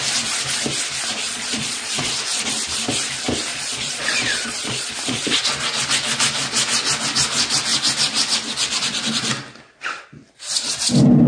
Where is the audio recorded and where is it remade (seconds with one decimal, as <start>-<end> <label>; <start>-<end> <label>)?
0.0-1.2 recorded; 1.2-2.1 remade; 2.1-3.5 recorded; 3.5-4.9 remade; 4.9-11.3 recorded